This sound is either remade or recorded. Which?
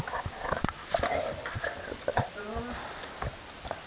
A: recorded